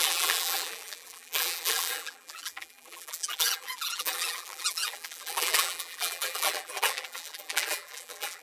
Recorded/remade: remade